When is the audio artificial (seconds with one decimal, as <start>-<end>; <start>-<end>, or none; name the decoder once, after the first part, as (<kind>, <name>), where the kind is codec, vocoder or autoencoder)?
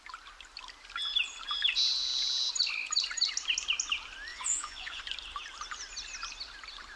4.3-5.0 (vocoder, Vocos)